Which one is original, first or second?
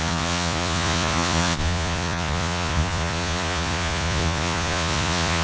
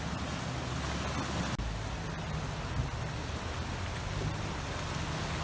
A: second